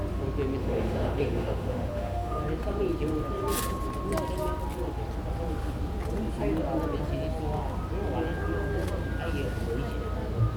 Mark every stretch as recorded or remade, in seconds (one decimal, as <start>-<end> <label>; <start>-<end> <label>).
0.0-0.6 recorded; 0.6-2.4 remade; 2.4-10.6 recorded